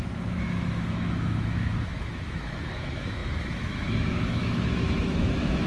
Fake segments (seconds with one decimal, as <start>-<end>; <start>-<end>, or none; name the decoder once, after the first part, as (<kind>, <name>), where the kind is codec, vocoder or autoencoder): 0.0-5.7 (autoencoder, DAC-VAE)